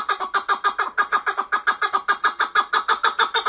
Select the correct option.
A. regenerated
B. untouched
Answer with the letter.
B